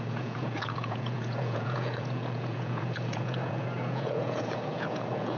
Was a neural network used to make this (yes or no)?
yes